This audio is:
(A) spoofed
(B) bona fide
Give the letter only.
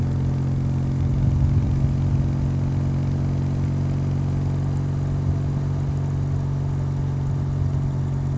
B